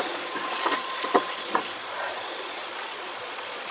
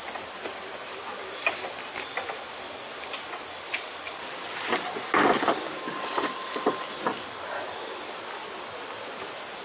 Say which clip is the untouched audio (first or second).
second